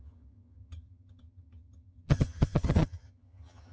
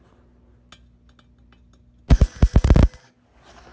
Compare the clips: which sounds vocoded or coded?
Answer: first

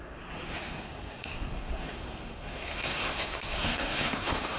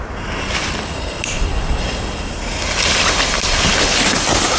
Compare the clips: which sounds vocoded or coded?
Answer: first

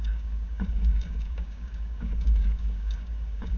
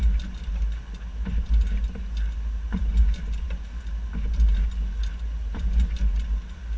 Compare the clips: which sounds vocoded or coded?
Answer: first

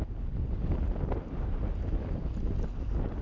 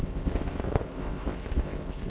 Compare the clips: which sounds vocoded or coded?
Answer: second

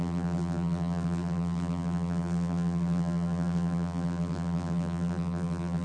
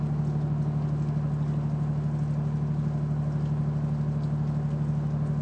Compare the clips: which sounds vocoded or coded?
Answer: first